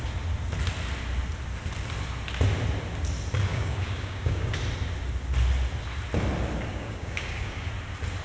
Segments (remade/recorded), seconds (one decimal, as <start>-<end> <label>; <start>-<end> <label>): 0.0-3.5 recorded; 3.5-4.6 remade; 4.6-6.7 recorded; 6.7-7.7 remade; 7.7-8.2 recorded